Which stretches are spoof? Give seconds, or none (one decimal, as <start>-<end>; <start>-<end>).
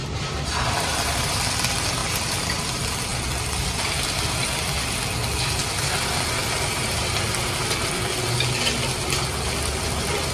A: 0.0-1.3; 2.0-2.6; 6.4-7.6